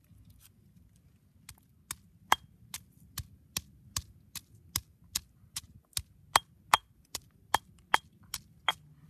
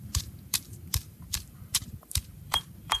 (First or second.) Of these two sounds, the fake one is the second